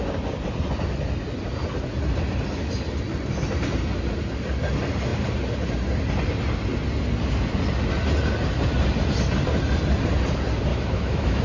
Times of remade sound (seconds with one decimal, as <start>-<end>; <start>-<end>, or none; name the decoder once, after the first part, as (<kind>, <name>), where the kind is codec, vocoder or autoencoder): 10.7-11.4 (autoencoder, DAC-VAE)

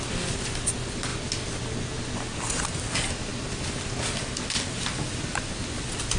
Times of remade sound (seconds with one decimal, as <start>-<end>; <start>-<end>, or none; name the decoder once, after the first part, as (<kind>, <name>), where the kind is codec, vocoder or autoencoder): none

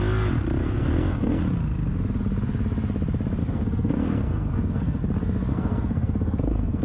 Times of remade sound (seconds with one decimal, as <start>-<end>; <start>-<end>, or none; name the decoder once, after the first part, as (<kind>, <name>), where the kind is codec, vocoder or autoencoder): 0.6-1.4 (codec, SNAC); 3.4-5.0; 5.5-6.8

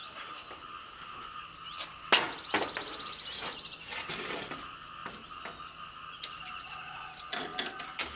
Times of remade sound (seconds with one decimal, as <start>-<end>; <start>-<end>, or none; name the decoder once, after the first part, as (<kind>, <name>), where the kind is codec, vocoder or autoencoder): none

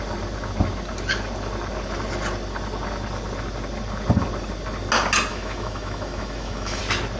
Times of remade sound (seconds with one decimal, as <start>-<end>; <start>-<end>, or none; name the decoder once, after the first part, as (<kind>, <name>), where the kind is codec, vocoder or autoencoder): 5.3-6.8 (autoencoder, DAC-VAE)

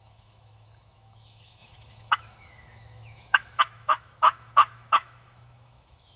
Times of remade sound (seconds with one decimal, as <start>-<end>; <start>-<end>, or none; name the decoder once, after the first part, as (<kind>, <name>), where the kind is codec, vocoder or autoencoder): 0.0-6.2 (autoencoder, DAC-VAE)

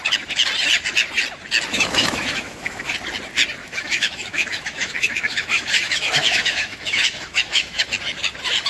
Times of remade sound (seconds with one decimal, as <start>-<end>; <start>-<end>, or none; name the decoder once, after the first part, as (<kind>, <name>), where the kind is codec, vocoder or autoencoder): 1.7-2.9 (autoencoder, DAC-VAE); 3.6-7.8

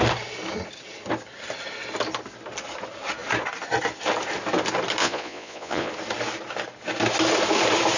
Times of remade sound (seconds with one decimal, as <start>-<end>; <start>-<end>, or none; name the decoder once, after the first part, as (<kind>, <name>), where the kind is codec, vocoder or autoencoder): 5.0-5.9 (vocoder, Vocos)